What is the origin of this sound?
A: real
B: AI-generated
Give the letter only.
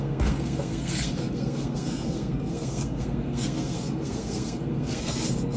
B